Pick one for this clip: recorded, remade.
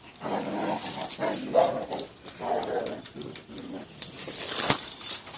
recorded